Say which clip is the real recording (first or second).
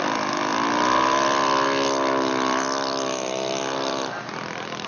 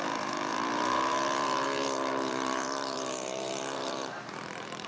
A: first